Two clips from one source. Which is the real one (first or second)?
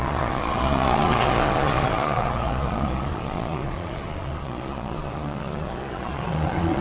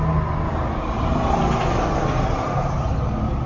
second